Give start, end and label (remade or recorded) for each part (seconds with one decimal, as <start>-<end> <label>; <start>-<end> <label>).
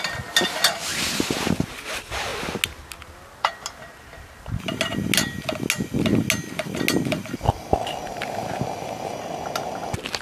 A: 0.0-10.2 recorded